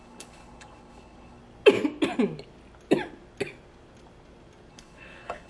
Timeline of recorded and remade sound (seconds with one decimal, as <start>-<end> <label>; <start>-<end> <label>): 0.0-1.4 remade; 1.4-4.7 recorded; 4.7-5.5 remade